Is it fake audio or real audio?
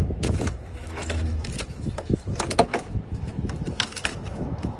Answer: fake